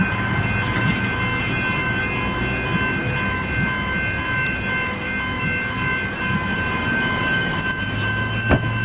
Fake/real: real